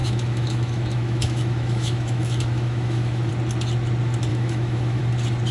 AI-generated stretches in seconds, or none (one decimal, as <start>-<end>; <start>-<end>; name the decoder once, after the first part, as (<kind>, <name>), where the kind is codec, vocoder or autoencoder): 0.0-3.3 (autoencoder, DAC-VAE); 4.3-5.0